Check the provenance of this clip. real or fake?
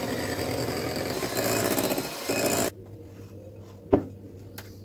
real